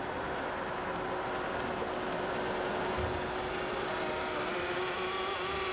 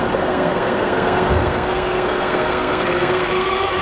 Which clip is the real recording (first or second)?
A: first